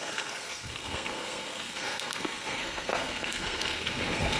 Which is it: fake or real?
fake